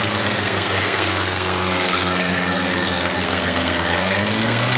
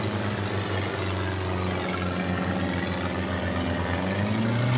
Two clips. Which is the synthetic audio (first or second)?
first